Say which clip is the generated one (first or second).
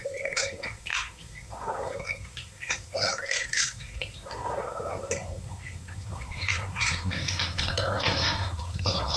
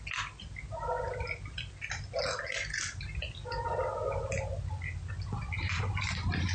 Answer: first